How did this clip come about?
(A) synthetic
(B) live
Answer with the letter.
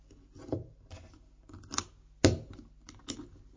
B